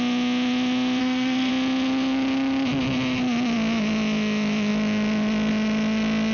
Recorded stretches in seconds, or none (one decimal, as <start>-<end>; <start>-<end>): 0.0-1.0; 1.5-6.3

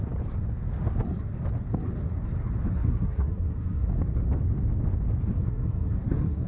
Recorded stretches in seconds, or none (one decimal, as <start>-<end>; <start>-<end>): 0.0-2.7; 3.9-5.3

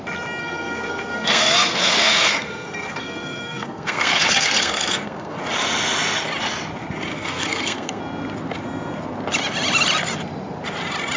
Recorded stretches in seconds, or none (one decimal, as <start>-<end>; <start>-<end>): 0.0-0.4; 5.4-7.1; 8.0-11.2

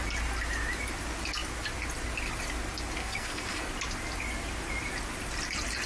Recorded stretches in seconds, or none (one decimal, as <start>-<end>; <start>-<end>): 0.0-3.0; 3.7-5.9

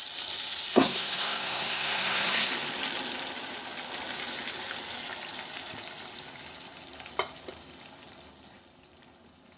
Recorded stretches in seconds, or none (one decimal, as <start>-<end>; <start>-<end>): 0.0-0.7; 2.5-9.6

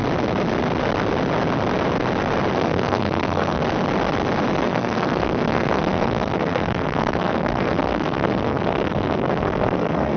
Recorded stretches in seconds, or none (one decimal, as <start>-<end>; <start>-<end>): 0.0-2.5; 3.6-4.6

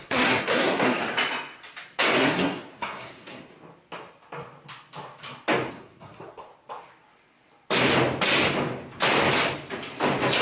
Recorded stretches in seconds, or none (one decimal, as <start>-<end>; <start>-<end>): 1.0-2.2; 3.5-5.7; 6.5-10.4